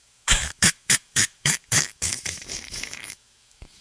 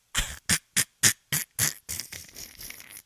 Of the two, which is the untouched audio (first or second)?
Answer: second